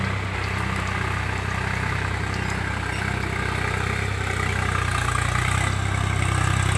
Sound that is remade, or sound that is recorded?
recorded